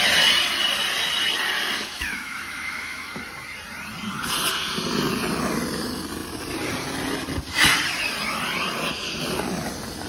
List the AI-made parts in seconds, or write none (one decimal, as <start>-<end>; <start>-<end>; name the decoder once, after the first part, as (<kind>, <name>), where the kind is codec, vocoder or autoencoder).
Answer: 1.8-3.2 (autoencoder, DAC-VAE)